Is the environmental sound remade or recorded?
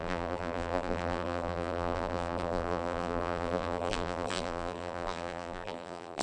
remade